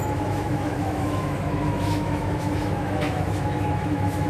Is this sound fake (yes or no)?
yes